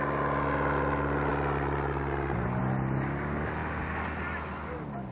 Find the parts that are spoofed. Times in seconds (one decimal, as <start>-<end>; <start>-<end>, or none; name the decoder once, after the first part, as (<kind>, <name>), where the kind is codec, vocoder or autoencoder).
none